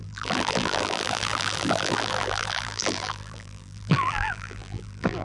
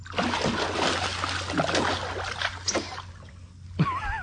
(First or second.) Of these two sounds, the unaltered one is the second